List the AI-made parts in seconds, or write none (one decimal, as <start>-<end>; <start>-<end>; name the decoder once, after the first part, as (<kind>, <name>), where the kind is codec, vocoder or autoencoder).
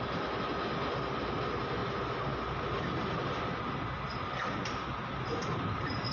none